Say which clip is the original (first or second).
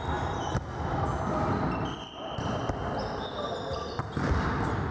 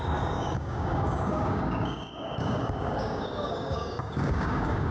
first